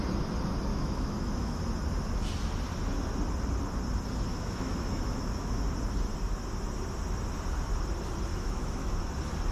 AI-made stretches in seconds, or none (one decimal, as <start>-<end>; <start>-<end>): 0.7-1.6; 4.3-5.7; 8.3-9.0